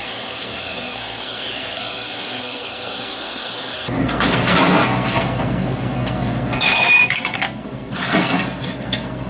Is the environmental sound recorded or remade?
remade